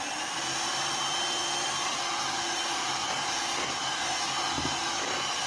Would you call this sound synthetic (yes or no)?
no